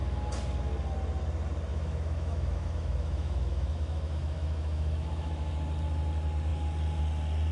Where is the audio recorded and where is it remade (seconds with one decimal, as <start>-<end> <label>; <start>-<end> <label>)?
0.0-1.7 recorded; 1.7-5.5 remade; 5.5-7.5 recorded